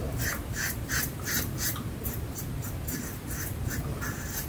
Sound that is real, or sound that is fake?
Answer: real